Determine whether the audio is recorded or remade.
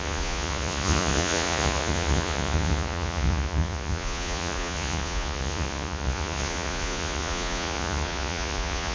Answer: remade